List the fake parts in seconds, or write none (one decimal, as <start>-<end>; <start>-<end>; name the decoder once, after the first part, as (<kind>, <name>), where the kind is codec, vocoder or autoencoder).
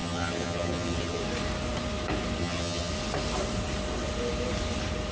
0.0-1.2 (vocoder, HiFi-GAN); 2.4-2.9